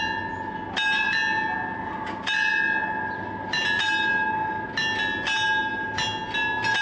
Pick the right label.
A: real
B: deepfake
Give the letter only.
A